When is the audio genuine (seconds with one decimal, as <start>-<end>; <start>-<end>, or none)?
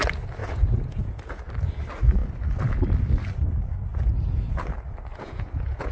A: 0.0-0.4; 1.4-5.1